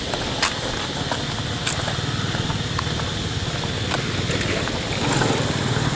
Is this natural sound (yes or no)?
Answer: yes